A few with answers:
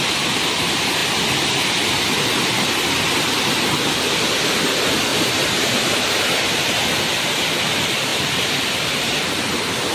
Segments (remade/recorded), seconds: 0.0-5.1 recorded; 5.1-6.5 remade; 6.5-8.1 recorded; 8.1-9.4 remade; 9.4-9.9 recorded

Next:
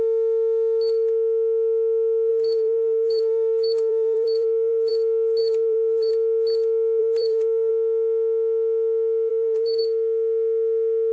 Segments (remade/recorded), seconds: 0.0-2.3 recorded; 2.3-4.9 remade; 4.9-5.4 recorded; 5.4-6.1 remade; 6.1-7.0 recorded; 7.0-7.7 remade; 7.7-9.3 recorded; 9.3-9.8 remade; 9.8-11.1 recorded

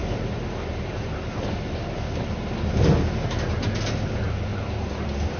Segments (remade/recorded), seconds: 0.0-1.1 remade; 1.1-4.5 recorded; 4.5-5.0 remade; 5.0-5.4 recorded

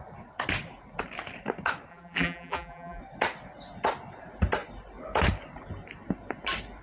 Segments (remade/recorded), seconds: 0.0-1.9 recorded; 1.9-3.0 remade; 3.0-6.8 recorded

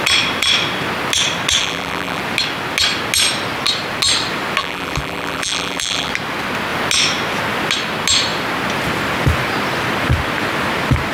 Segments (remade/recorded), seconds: 0.0-1.6 recorded; 1.6-2.2 remade; 2.2-4.6 recorded; 4.6-6.1 remade; 6.1-11.1 recorded

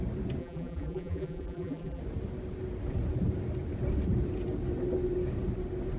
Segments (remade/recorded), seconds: 0.0-0.4 recorded; 0.4-2.0 remade; 2.0-6.0 recorded